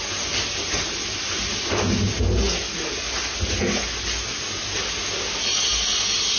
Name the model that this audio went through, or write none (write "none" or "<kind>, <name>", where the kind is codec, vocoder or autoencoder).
none